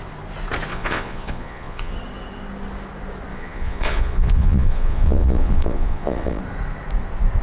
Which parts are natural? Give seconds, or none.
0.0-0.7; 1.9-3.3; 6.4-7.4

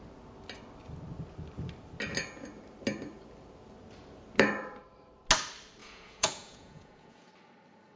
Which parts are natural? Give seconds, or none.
0.0-5.8; 7.3-8.0